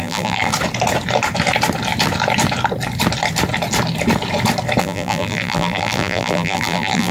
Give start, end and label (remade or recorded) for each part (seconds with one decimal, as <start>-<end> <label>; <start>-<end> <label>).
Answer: 0.0-0.5 remade; 0.5-4.8 recorded; 4.8-7.1 remade

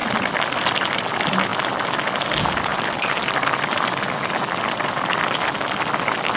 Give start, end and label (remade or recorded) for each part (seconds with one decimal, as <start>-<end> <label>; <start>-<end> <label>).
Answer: 0.0-0.7 remade; 0.7-6.4 recorded

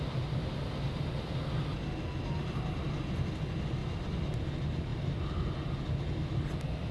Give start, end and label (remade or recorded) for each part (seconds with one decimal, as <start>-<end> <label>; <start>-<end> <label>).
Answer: 0.0-3.8 recorded; 3.8-4.5 remade; 4.5-6.9 recorded

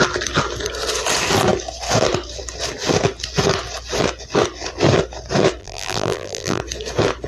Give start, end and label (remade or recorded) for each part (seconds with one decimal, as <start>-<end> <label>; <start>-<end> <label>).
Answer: 0.0-5.6 recorded; 5.6-6.6 remade; 6.6-7.3 recorded

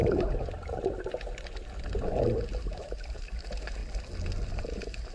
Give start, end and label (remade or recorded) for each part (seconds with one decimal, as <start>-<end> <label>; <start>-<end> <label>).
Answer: 0.0-3.8 remade; 3.8-4.6 recorded; 4.6-5.1 remade